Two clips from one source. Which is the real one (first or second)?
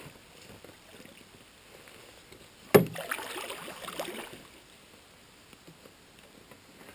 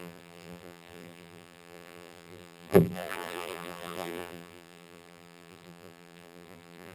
first